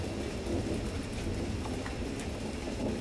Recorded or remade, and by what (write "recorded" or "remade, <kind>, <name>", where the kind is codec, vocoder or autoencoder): recorded